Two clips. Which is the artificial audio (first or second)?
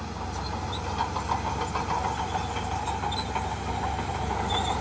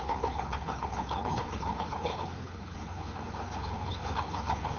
second